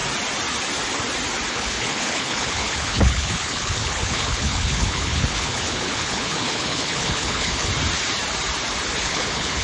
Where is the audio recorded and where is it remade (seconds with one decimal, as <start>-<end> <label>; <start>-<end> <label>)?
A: 0.0-1.5 recorded; 1.5-7.7 remade; 7.7-9.0 recorded; 9.0-9.6 remade